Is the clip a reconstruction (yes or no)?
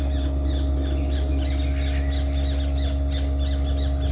no